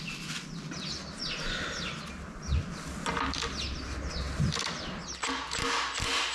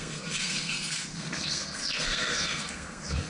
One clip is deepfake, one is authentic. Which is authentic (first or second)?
first